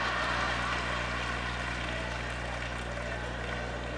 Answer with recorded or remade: recorded